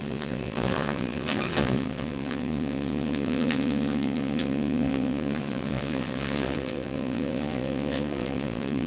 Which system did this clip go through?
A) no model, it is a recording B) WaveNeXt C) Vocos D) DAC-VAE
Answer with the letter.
B